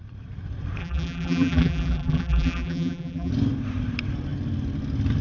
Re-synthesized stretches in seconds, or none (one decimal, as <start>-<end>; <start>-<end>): 0.8-3.3

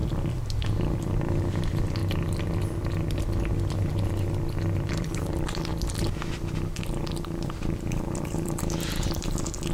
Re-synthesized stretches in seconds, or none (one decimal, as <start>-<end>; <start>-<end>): 0.0-2.0; 4.9-5.7; 6.3-9.7

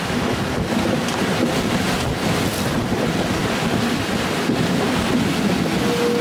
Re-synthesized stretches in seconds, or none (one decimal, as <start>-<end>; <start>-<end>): none

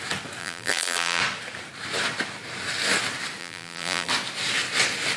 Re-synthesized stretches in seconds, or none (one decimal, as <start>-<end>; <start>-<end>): 0.4-1.2; 3.4-4.1

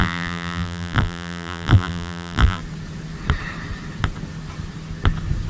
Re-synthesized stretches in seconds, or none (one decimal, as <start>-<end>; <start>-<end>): 0.0-2.6

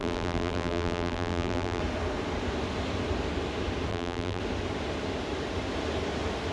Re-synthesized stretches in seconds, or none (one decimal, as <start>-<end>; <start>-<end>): 0.0-1.8; 3.9-4.4

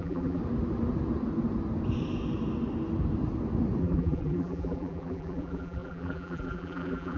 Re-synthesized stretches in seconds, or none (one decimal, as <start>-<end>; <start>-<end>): 0.0-0.4; 3.8-7.2